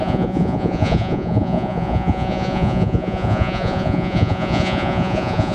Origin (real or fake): fake